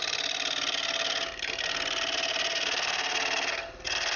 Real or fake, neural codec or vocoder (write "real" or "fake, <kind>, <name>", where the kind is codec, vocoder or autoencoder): real